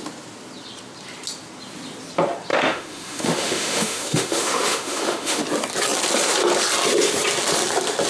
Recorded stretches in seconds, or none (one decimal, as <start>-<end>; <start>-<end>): 0.0-2.5; 5.4-8.1